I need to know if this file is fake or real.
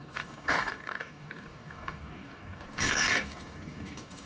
fake